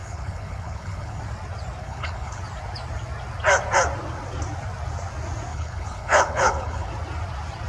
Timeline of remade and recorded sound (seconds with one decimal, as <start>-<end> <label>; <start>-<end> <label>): 0.0-1.2 remade; 1.2-1.8 recorded; 1.8-2.4 remade; 2.4-5.5 recorded; 5.5-6.9 remade; 6.9-7.7 recorded